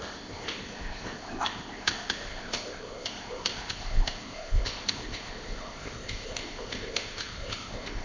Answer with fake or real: fake